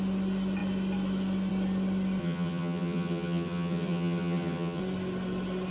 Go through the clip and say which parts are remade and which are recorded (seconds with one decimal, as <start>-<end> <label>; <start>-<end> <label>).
0.0-2.2 recorded; 2.2-4.8 remade; 4.8-5.7 recorded